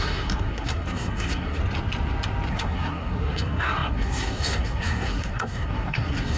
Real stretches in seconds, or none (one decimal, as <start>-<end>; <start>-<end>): 1.6-2.5